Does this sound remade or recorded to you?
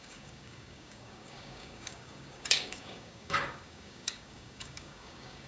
remade